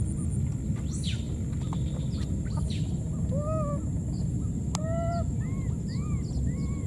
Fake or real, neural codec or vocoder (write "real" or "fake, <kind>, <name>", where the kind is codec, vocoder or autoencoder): real